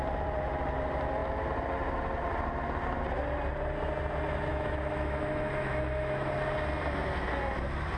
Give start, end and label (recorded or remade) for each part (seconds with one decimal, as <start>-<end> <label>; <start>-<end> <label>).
0.0-4.5 recorded; 4.5-6.3 remade; 6.3-8.0 recorded